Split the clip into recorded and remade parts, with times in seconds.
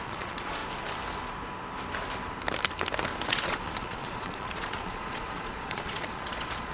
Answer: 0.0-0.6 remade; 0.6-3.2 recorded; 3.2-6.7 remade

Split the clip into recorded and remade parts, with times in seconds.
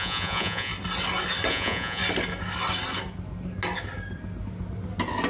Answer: 0.0-0.7 remade; 0.7-1.5 recorded; 1.5-2.0 remade; 2.0-5.3 recorded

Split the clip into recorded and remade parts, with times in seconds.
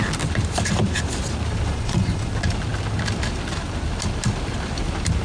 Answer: 0.0-1.7 recorded; 1.7-2.3 remade; 2.3-5.2 recorded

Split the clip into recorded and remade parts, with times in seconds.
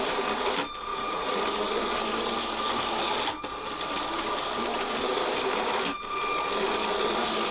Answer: 0.0-0.9 recorded; 0.9-1.4 remade; 1.4-7.5 recorded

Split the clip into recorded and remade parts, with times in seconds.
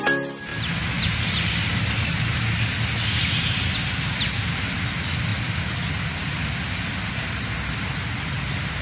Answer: 0.0-8.8 recorded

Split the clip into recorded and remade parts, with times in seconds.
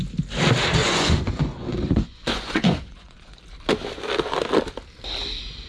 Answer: 0.0-0.8 recorded; 0.8-3.4 remade; 3.4-5.7 recorded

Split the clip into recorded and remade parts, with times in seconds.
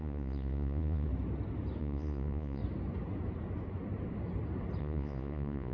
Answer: 0.0-1.1 remade; 1.1-1.8 recorded; 1.8-2.6 remade; 2.6-4.8 recorded; 4.8-5.7 remade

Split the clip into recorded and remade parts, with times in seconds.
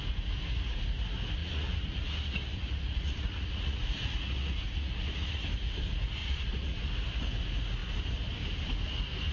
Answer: 0.0-1.4 recorded; 1.4-5.4 remade; 5.4-6.2 recorded; 6.2-6.9 remade; 6.9-9.3 recorded